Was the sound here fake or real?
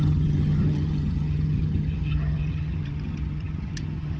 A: fake